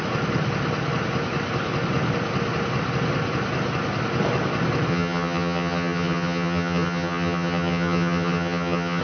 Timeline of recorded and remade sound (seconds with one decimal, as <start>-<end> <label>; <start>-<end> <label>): 0.0-4.9 recorded; 4.9-9.0 remade